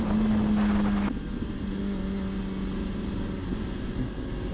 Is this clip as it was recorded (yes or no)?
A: yes